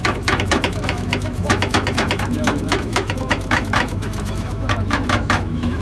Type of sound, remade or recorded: remade